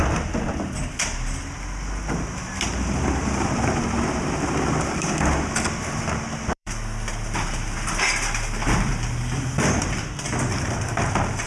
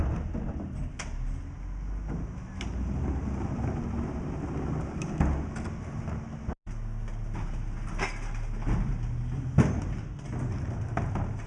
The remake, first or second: first